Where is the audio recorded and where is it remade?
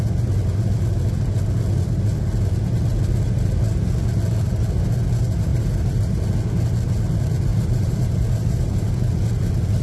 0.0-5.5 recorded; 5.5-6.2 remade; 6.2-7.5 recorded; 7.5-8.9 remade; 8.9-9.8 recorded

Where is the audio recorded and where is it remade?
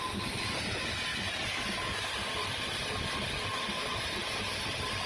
0.0-5.1 recorded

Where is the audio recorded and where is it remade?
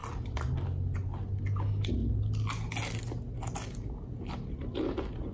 0.0-5.3 recorded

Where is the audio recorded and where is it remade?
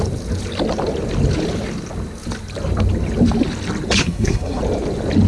0.0-4.0 recorded; 4.0-4.6 remade; 4.6-5.3 recorded